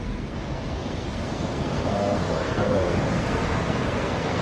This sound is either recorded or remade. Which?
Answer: remade